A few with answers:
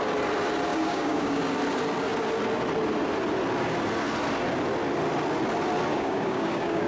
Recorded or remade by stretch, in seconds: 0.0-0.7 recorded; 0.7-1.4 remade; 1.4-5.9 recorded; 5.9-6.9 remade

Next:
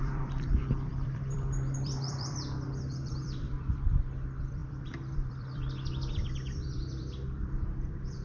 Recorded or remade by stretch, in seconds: 0.0-8.2 remade